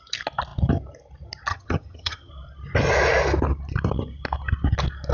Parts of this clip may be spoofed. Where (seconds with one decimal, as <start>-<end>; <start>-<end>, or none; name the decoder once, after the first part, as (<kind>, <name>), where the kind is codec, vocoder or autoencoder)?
1.5-2.3 (vocoder, HiFi-GAN)